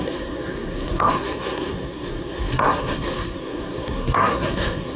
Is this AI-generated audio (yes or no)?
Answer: yes